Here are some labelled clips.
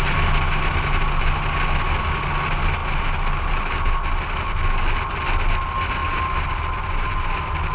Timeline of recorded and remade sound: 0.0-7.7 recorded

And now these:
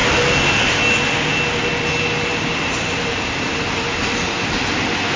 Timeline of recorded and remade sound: 0.0-2.3 recorded; 2.3-4.5 remade; 4.5-5.2 recorded

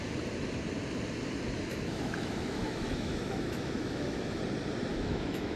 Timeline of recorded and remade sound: 0.0-1.7 recorded; 1.7-4.4 remade; 4.4-4.9 recorded; 4.9-5.6 remade

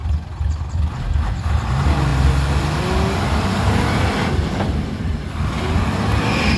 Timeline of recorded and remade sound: 0.0-6.6 recorded